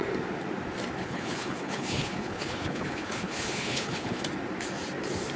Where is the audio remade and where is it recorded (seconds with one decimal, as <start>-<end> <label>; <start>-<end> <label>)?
0.0-1.0 recorded; 1.0-4.2 remade; 4.2-5.4 recorded